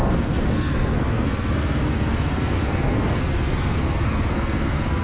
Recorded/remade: remade